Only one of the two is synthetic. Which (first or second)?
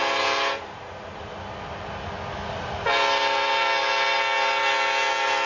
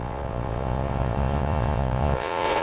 second